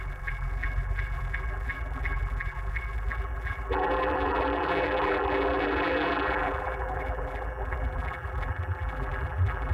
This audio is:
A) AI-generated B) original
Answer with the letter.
A